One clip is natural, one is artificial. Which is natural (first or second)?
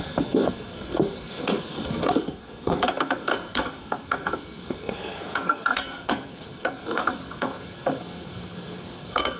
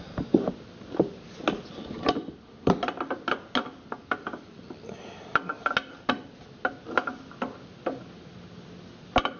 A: second